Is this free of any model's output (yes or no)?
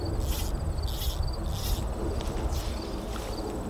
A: yes